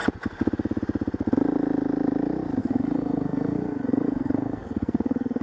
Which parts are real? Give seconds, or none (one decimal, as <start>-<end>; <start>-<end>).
0.0-2.6